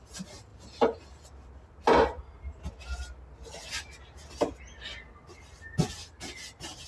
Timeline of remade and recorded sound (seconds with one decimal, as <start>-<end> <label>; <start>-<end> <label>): 0.0-6.9 recorded